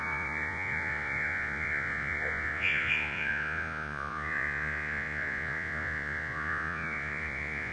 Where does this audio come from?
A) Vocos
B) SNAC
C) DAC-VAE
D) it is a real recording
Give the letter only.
A